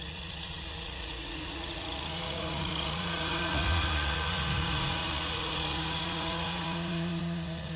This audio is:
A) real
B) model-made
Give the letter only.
B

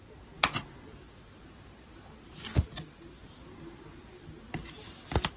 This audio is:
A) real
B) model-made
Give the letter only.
A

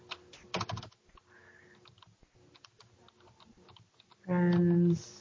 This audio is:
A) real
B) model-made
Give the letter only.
A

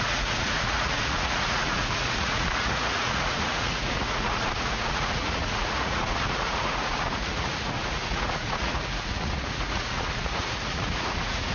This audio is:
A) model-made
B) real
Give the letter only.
A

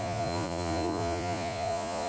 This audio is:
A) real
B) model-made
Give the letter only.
B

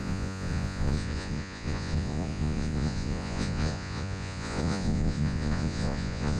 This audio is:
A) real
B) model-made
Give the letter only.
B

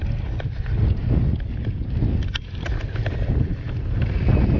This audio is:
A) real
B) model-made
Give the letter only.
A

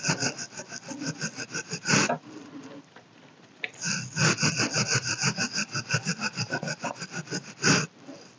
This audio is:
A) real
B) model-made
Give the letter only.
A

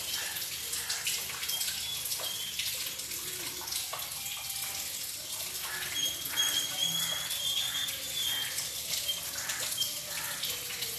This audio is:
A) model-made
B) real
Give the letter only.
B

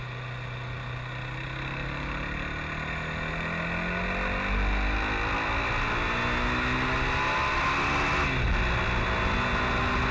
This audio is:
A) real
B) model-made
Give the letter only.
A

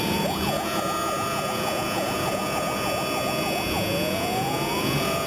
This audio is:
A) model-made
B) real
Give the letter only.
A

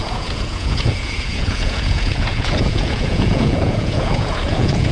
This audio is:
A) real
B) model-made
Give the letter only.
B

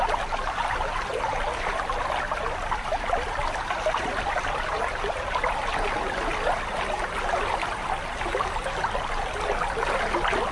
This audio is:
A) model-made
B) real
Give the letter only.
B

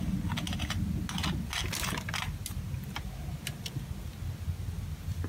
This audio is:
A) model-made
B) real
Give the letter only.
B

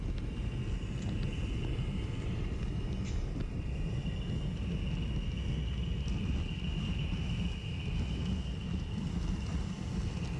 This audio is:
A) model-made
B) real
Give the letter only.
B